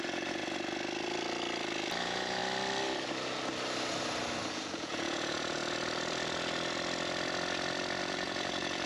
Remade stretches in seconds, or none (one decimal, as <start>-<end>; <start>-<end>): 0.0-0.4; 2.0-2.4; 4.5-5.6; 8.0-8.9